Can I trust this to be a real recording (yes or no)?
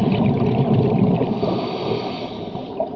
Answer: yes